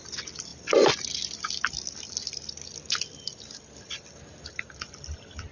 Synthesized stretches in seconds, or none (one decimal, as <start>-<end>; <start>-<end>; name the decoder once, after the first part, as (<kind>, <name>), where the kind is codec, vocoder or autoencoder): none